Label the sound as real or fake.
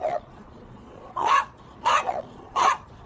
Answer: fake